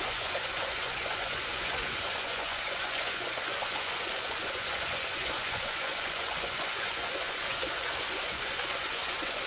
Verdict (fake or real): fake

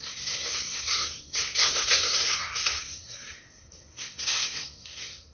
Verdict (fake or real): fake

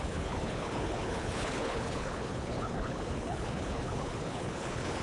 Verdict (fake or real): fake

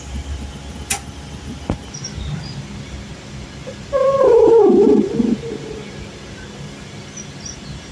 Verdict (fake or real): real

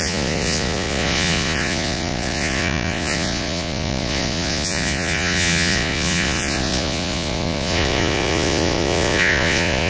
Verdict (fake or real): fake